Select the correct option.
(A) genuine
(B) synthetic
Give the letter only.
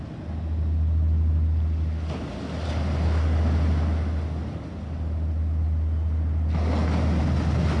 A